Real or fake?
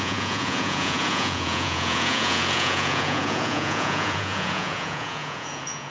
fake